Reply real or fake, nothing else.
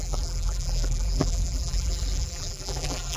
fake